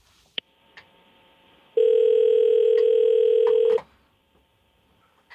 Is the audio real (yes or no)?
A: no